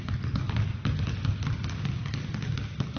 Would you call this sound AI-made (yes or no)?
no